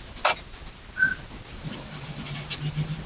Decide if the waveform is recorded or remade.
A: recorded